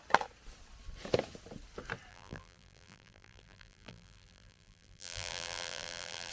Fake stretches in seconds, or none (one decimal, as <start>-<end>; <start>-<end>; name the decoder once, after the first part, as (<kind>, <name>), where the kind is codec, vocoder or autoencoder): 2.1-6.3 (vocoder, BigVGAN v2)